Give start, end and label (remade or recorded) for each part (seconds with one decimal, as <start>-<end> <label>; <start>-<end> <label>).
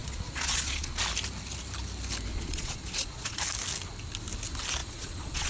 0.0-1.0 remade; 1.0-2.3 recorded; 2.3-3.4 remade; 3.4-4.8 recorded; 4.8-5.5 remade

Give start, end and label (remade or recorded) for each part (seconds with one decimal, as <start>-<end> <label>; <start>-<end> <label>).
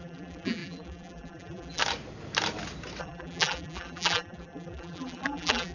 0.0-1.8 remade; 1.8-3.0 recorded; 3.0-5.7 remade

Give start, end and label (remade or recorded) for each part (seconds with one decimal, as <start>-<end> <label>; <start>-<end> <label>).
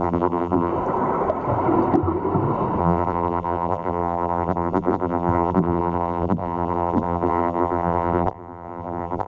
0.0-0.7 remade; 0.7-2.8 recorded; 2.8-9.3 remade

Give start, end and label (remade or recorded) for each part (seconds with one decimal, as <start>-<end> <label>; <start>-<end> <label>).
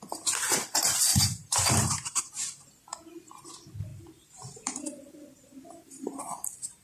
0.0-1.1 recorded; 1.1-2.3 remade; 2.3-3.9 recorded; 3.9-6.2 remade; 6.2-6.8 recorded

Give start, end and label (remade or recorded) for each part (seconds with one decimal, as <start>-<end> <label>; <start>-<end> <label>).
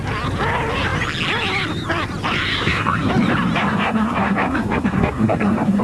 0.0-2.5 recorded; 2.5-3.1 remade; 3.1-3.6 recorded; 3.6-5.8 remade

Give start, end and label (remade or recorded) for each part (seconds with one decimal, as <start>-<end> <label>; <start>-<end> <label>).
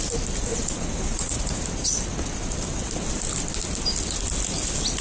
0.0-0.5 recorded; 0.5-1.6 remade; 1.6-5.0 recorded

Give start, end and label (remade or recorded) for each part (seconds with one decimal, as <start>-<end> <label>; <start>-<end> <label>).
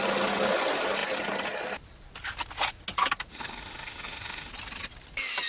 0.0-3.3 recorded; 3.3-4.5 remade; 4.5-5.5 recorded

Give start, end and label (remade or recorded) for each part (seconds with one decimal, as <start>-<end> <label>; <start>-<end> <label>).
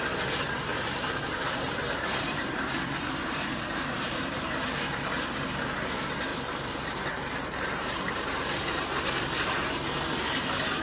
0.0-0.7 recorded; 0.7-4.8 remade; 4.8-6.3 recorded; 6.3-8.7 remade; 8.7-10.8 recorded